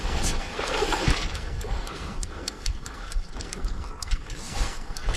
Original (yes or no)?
no